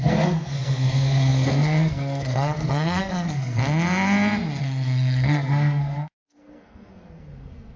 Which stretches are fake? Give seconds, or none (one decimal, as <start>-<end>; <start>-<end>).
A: 0.0-3.6; 4.6-7.8